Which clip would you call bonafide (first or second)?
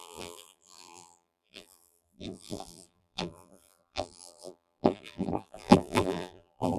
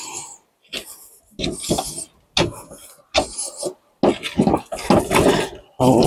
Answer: second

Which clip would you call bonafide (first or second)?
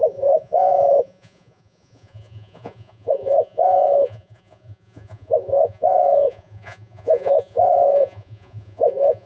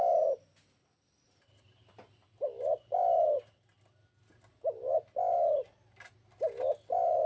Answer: second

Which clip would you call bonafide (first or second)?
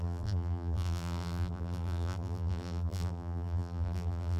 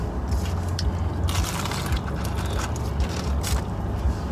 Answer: second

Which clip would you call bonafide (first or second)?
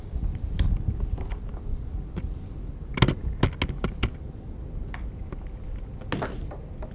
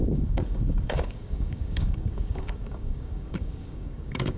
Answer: first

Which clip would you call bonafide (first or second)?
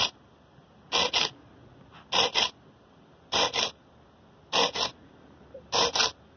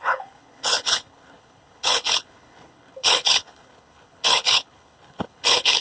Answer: first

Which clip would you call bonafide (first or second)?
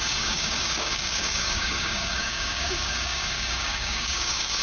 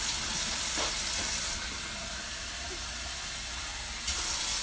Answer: second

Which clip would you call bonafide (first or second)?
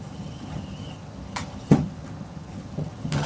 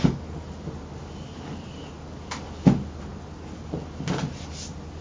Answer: second